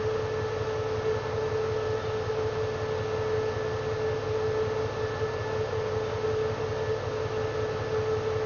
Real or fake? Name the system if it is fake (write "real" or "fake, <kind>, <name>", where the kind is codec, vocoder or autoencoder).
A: real